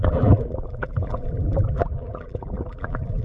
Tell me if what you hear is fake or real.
fake